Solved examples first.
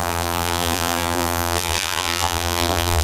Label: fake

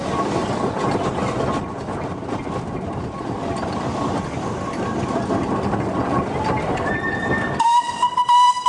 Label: fake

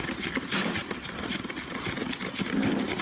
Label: fake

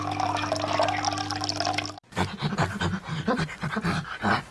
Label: fake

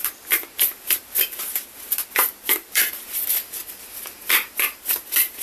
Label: fake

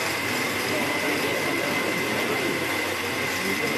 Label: real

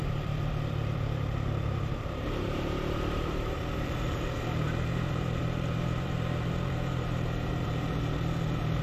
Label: fake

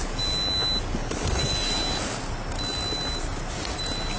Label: real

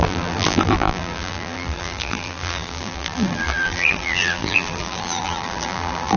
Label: fake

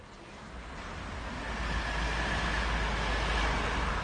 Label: real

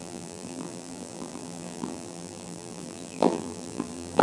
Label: fake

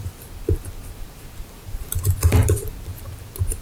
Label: fake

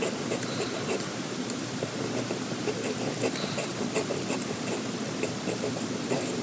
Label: fake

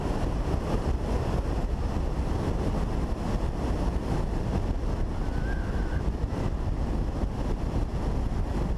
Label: real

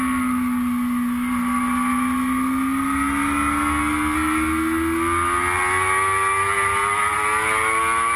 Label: real